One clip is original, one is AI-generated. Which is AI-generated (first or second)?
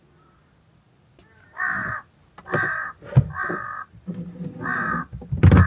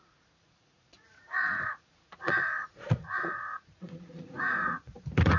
second